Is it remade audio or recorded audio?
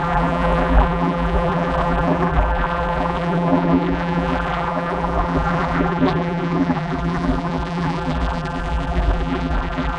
remade